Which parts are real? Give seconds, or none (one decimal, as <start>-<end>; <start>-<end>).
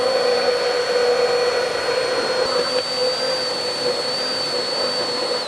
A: 0.0-5.5